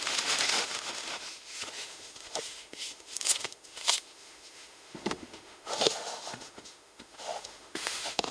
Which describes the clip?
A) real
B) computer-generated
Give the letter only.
B